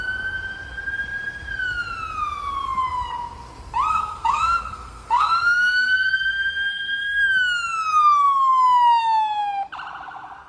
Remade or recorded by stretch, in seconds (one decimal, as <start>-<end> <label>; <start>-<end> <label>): 0.0-3.9 recorded; 3.9-7.2 remade; 7.2-10.5 recorded